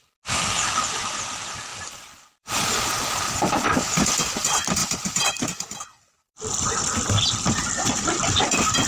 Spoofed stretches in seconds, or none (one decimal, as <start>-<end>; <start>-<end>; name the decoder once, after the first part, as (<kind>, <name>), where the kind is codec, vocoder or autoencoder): 1.7-2.6 (vocoder, BigVGAN v2); 4.8-8.4

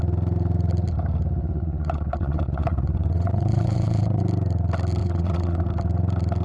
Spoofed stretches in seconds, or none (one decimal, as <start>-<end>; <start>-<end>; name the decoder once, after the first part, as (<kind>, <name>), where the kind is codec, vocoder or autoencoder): 1.4-4.2 (vocoder, WaveNeXt); 5.0-5.6

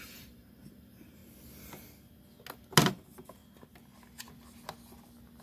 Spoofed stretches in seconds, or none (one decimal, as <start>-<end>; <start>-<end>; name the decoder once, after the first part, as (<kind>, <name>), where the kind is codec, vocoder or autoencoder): 0.0-1.2 (vocoder, BigVGAN v2); 2.9-3.4

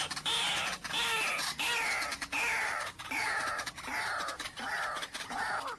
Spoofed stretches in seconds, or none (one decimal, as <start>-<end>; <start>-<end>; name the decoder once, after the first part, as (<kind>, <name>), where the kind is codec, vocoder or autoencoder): 2.6-3.7 (vocoder, BigVGAN v2)

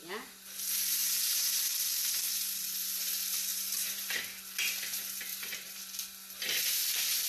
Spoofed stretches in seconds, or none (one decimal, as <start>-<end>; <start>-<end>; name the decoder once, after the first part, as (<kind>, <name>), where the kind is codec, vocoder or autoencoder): 1.0-1.6 (vocoder, BigVGAN v2); 3.5-4.1; 5.3-5.8